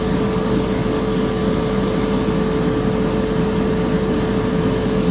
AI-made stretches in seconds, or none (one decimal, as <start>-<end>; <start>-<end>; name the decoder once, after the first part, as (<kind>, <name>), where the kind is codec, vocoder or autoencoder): 0.0-1.4 (codec, DAC); 4.5-5.1